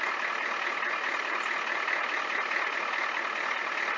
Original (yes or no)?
yes